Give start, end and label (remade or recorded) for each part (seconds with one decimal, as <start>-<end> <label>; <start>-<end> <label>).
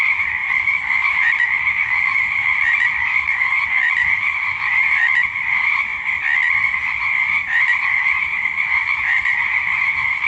0.0-0.4 remade; 0.4-1.0 recorded; 1.0-5.9 remade; 5.9-6.9 recorded; 6.9-10.3 remade